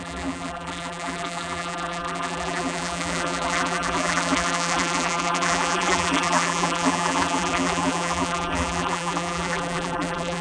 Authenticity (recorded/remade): remade